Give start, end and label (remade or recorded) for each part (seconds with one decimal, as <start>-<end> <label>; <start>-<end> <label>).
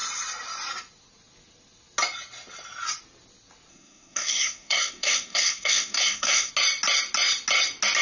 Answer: 0.0-3.7 recorded; 3.7-6.5 remade; 6.5-8.0 recorded